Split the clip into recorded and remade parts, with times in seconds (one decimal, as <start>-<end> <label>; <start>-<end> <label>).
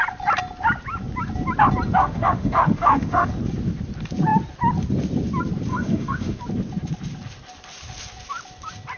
0.0-2.0 recorded; 2.0-3.3 remade; 3.3-5.7 recorded; 5.7-6.4 remade; 6.4-9.0 recorded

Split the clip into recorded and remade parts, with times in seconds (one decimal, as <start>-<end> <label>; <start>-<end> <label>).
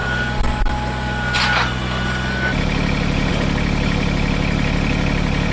0.0-5.5 recorded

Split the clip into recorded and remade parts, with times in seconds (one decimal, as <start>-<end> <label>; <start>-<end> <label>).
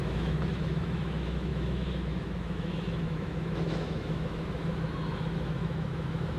0.0-6.4 remade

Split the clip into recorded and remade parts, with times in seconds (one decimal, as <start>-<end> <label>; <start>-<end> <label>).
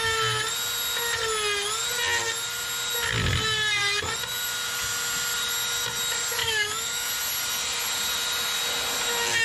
0.0-6.4 recorded; 6.4-7.1 remade; 7.1-9.4 recorded